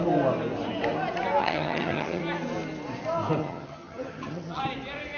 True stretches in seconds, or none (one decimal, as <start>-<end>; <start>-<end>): 0.0-1.4; 2.2-3.4; 4.6-5.2